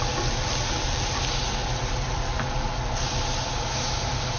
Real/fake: real